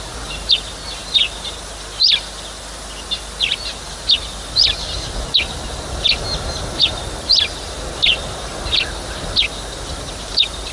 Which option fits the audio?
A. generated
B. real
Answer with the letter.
B